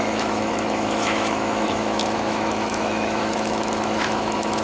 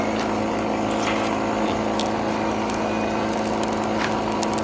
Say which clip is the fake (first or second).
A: first